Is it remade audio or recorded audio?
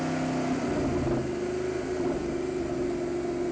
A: recorded